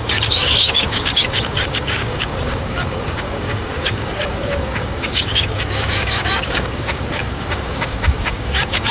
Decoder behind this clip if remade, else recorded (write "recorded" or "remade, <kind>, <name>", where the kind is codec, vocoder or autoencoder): remade, codec, DAC